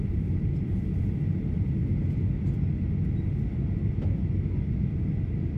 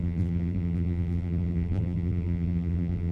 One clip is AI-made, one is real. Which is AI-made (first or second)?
second